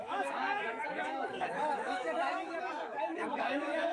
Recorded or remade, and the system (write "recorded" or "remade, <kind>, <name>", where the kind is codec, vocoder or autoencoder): remade, codec, DAC